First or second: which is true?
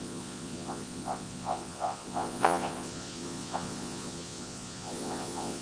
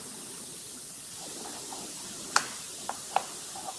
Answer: second